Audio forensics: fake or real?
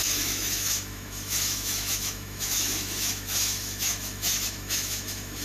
fake